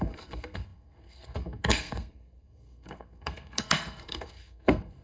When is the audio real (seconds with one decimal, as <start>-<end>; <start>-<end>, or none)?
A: none